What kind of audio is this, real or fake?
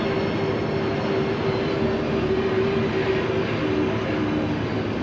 real